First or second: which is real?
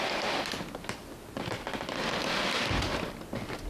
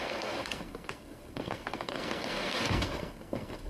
first